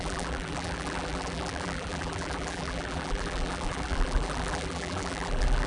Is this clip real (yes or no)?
no